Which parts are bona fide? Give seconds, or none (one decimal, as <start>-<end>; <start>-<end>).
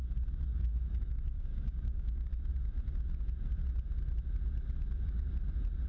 0.0-0.5; 2.3-5.9